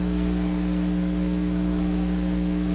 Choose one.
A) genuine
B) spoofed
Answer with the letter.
B